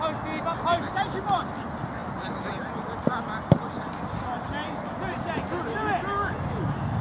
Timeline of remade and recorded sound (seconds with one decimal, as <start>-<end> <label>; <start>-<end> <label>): 0.0-7.0 recorded